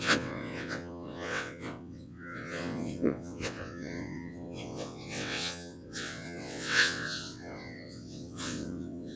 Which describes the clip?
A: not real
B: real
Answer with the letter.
A